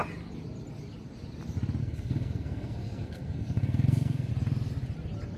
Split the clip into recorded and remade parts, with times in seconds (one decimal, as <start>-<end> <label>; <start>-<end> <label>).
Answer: 0.0-1.8 recorded; 1.8-4.3 remade; 4.3-5.4 recorded